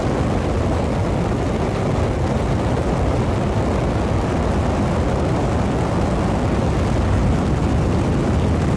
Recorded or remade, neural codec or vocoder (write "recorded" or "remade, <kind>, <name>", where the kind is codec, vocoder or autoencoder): recorded